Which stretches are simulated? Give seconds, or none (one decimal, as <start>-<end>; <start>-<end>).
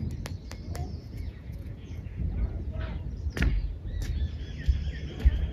0.8-2.8